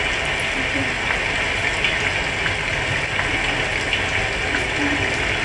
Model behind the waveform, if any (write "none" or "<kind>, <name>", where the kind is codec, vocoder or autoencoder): none